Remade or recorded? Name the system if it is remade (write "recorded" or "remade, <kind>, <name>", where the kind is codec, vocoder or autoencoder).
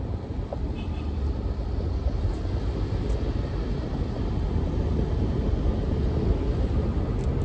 recorded